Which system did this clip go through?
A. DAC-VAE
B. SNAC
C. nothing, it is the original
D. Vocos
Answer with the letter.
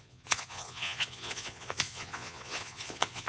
D